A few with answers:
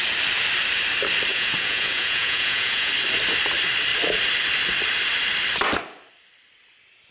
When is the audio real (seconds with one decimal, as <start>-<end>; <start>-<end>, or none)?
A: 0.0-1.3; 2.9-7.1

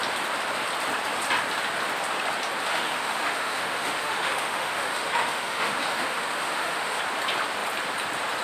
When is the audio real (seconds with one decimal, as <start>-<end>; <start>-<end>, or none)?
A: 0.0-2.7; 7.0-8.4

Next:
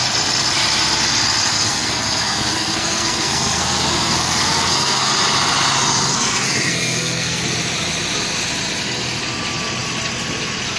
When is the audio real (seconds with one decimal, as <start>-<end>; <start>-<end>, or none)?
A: 0.0-1.5; 5.1-6.1; 7.4-10.8

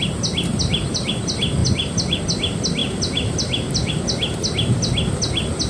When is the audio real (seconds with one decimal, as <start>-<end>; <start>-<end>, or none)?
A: 0.0-0.5; 1.1-1.6; 2.2-2.8; 3.9-5.7

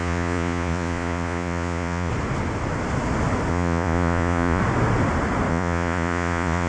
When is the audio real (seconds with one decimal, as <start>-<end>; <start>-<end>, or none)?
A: 2.1-3.5; 4.6-5.5

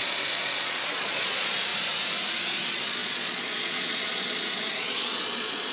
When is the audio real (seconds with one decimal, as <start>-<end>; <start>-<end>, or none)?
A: 1.7-2.4

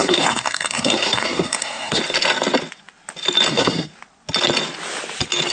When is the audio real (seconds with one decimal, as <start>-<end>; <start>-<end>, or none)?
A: 2.0-3.5; 3.9-5.5